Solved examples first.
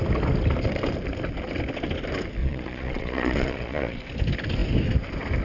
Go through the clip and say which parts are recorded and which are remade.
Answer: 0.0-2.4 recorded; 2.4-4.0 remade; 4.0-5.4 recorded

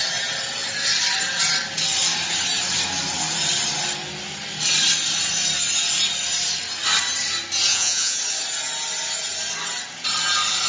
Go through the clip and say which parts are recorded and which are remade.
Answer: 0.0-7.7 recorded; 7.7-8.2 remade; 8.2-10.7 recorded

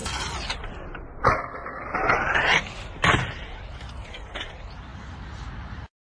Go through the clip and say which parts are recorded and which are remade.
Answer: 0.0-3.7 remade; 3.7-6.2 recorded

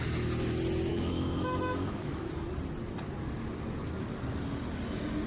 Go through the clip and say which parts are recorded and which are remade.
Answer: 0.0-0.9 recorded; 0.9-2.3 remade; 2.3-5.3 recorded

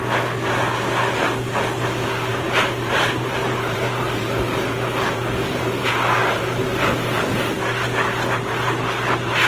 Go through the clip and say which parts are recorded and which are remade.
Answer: 0.0-2.3 recorded; 2.3-5.8 remade; 5.8-6.2 recorded; 6.2-7.2 remade; 7.2-9.5 recorded